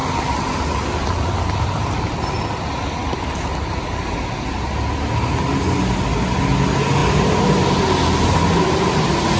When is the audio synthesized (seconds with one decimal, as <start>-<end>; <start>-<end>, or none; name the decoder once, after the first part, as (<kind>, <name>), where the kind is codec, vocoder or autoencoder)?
none